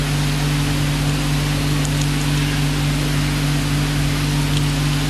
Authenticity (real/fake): real